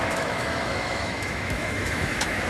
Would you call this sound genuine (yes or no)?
no